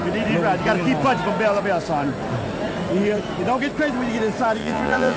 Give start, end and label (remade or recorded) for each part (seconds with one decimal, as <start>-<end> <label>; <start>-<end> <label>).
0.0-4.6 recorded; 4.6-5.2 remade